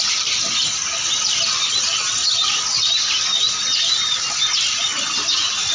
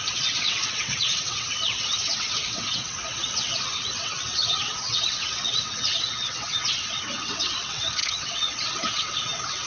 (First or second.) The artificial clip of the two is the second